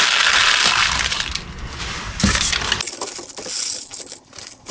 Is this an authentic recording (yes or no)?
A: yes